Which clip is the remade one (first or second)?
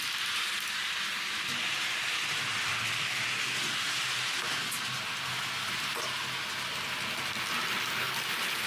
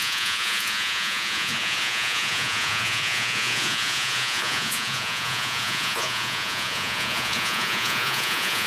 second